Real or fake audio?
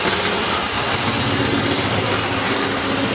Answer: real